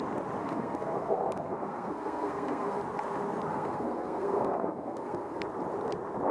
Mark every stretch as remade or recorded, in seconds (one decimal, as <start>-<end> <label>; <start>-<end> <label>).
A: 0.0-0.4 recorded; 0.4-2.8 remade; 2.8-3.5 recorded; 3.5-5.4 remade; 5.4-6.3 recorded